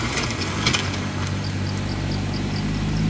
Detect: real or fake real